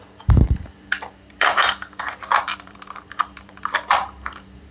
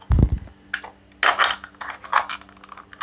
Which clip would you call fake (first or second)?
first